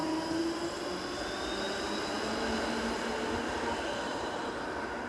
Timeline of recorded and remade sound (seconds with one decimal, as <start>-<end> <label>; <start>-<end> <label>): 0.0-4.1 recorded; 4.1-5.1 remade